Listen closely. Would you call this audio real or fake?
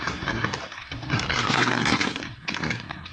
fake